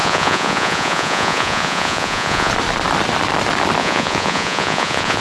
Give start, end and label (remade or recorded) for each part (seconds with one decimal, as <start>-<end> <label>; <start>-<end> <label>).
0.0-2.5 remade; 2.5-3.8 recorded; 3.8-5.2 remade